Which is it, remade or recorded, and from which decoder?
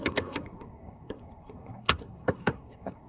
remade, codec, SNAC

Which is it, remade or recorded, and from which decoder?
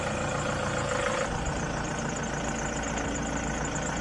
recorded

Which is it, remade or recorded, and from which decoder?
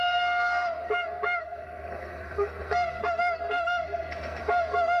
remade, codec, SNAC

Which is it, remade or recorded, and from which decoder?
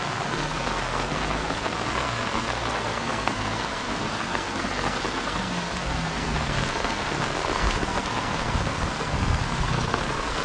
remade, codec, SNAC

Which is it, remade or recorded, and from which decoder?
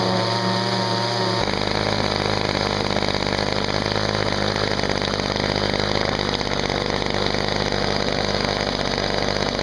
recorded